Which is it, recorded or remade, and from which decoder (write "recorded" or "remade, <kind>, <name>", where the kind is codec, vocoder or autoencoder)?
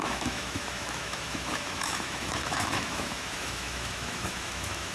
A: remade, autoencoder, DAC-VAE